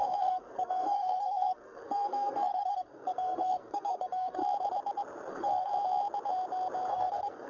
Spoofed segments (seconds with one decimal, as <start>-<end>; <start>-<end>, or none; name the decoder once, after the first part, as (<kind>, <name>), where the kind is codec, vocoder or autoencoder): 0.0-4.4 (codec, SNAC); 5.3-5.7; 6.9-7.5